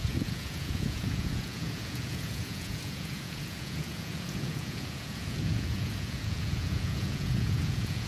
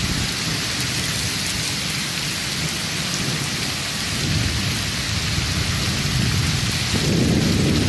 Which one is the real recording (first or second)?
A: second